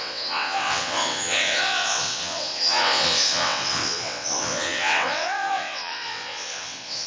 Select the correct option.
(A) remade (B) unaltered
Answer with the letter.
A